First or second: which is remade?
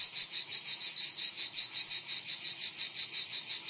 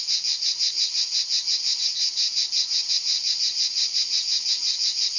first